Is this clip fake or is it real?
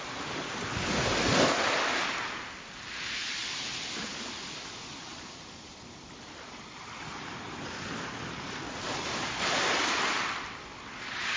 real